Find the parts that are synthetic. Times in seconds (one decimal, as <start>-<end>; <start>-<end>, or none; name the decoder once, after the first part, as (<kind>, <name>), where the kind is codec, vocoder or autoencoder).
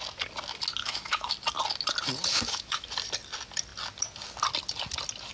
0.8-1.3 (autoencoder, DAC-VAE); 2.3-2.9